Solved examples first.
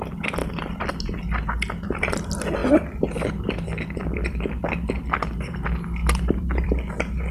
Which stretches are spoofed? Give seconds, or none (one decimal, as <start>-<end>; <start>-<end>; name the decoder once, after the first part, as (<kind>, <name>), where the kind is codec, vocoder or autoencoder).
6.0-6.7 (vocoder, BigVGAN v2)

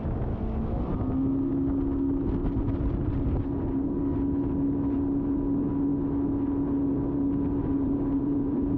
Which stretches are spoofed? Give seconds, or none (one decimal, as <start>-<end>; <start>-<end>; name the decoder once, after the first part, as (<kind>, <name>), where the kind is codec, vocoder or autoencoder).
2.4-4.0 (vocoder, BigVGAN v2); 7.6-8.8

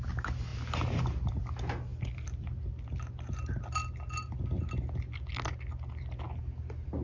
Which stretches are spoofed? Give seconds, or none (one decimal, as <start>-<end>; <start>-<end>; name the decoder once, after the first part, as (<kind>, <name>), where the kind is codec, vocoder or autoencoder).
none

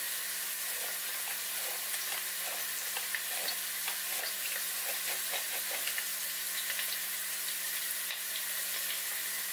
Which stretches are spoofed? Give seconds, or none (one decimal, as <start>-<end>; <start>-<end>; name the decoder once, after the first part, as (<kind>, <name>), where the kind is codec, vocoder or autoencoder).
none